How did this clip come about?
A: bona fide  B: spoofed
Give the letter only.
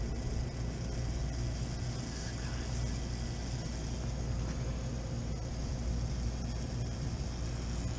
A